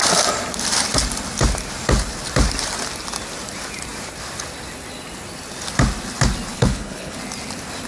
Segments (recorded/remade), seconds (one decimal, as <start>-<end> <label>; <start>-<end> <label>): 0.0-6.5 recorded; 6.5-7.2 remade; 7.2-7.9 recorded